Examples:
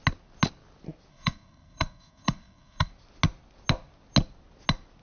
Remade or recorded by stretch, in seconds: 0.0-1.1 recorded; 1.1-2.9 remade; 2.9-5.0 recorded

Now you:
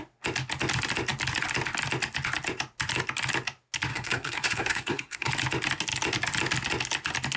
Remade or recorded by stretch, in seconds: 0.0-3.9 recorded; 3.9-5.3 remade; 5.3-7.4 recorded

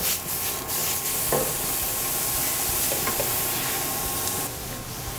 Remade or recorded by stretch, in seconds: 0.0-5.2 recorded